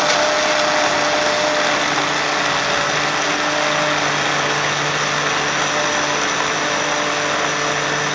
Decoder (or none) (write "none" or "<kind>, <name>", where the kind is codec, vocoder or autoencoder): none